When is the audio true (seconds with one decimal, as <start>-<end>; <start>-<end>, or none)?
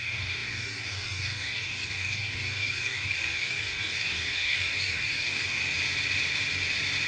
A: 5.6-7.1